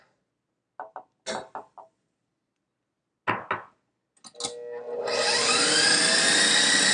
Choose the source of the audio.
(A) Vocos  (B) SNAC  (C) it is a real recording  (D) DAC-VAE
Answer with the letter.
C